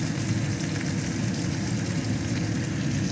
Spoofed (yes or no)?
no